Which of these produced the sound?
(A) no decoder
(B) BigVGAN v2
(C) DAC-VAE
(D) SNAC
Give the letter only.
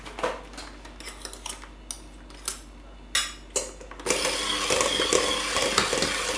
A